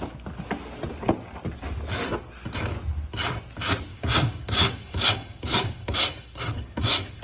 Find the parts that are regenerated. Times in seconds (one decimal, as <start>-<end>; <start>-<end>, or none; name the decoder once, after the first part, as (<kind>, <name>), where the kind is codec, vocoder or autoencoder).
3.9-7.2 (codec, DAC)